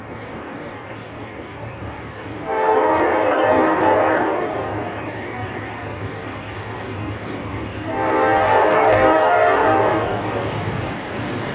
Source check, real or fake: fake